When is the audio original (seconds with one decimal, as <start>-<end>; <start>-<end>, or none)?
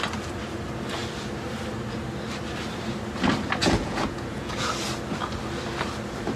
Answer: 0.0-3.6; 4.7-6.4